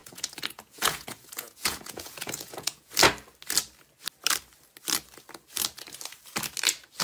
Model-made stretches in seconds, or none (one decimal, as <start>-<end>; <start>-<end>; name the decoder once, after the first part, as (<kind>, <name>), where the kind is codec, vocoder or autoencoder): 0.0-2.9 (vocoder, Vocos)